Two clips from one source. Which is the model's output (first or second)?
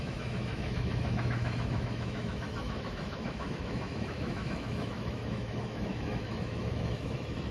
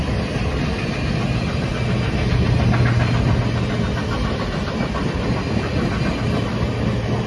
first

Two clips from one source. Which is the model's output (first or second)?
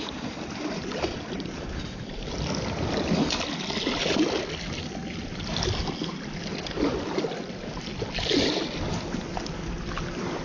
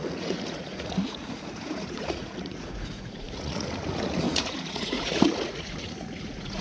second